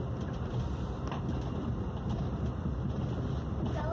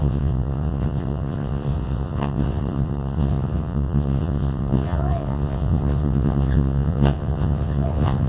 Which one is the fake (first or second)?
second